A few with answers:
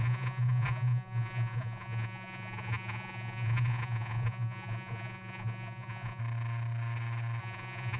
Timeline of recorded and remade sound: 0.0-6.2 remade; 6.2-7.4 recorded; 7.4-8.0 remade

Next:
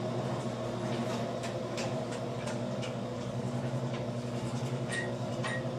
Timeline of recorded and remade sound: 0.0-1.8 recorded; 1.8-5.3 remade; 5.3-5.8 recorded

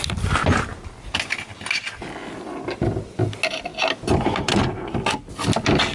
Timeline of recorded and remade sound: 0.0-2.2 recorded; 2.2-3.2 remade; 3.2-3.7 recorded; 3.7-4.7 remade; 4.7-5.9 recorded